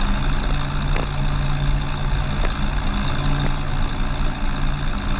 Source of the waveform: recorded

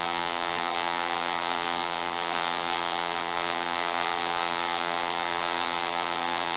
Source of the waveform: remade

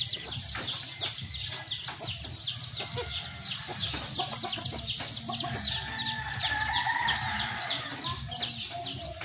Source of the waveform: recorded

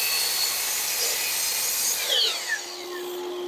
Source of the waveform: recorded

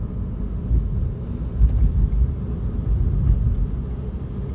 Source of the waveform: recorded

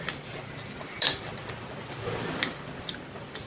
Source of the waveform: recorded